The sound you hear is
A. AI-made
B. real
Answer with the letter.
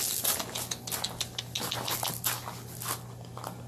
B